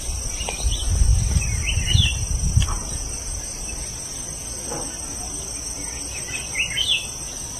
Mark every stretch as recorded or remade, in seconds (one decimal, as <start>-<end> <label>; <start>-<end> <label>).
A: 0.0-7.6 recorded